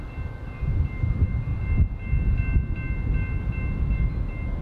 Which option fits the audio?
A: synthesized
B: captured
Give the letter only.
B